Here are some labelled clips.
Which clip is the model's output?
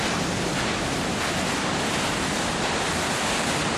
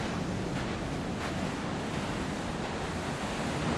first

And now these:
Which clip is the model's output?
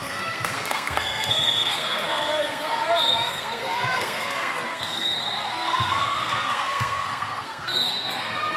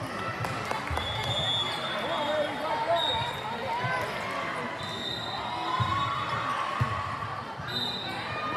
first